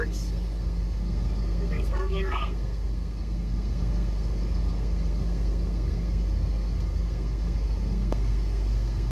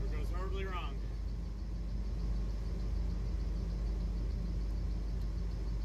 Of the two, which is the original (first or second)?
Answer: second